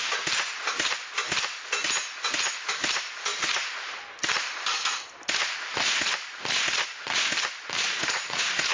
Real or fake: real